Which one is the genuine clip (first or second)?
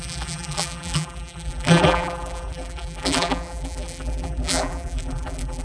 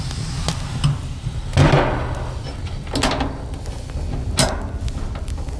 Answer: second